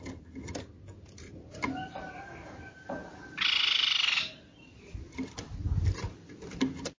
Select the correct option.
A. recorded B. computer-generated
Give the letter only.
A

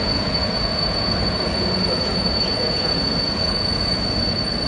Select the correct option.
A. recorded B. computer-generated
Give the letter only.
B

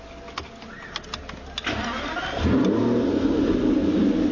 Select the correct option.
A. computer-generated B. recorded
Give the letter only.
B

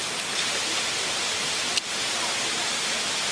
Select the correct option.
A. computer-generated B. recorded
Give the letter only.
B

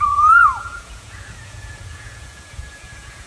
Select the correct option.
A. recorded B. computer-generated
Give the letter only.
B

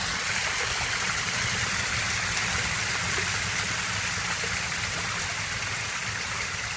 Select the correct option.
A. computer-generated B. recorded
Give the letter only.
B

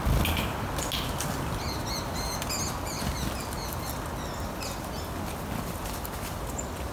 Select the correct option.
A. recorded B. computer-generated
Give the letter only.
A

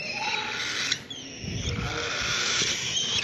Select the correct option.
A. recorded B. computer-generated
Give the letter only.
A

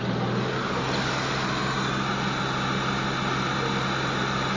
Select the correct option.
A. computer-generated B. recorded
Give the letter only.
B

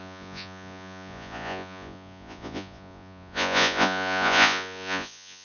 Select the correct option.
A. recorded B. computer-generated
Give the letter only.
B